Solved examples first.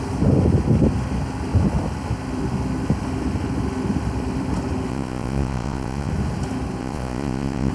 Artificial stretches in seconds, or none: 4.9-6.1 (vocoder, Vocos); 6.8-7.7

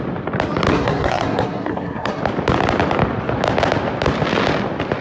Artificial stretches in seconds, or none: 0.7-2.2 (codec, SNAC)

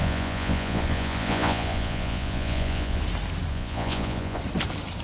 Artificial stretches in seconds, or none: 0.0-3.0 (vocoder, Vocos); 3.5-4.4

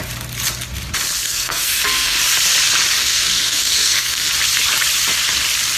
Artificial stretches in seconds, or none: 1.2-2.2 (codec, SNAC); 3.0-4.3